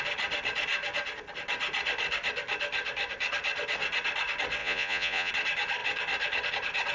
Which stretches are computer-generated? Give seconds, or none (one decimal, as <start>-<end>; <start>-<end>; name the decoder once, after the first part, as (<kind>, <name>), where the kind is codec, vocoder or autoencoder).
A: 4.6-5.3 (vocoder, Vocos)